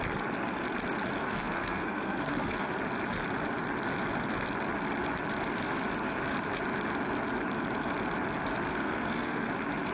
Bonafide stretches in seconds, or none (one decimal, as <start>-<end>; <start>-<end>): 0.0-1.2; 2.7-8.7; 9.5-9.9